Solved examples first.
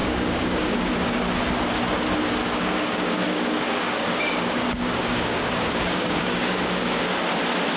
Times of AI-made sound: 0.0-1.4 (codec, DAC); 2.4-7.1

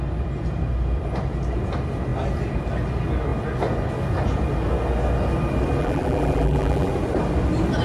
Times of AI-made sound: 5.8-6.9 (vocoder, BigVGAN v2)

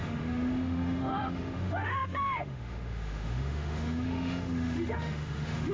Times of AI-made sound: 0.0-5.7 (autoencoder, DAC-VAE)

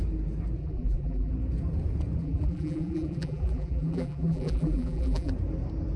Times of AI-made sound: 0.6-1.3 (vocoder, BigVGAN v2); 2.2-5.3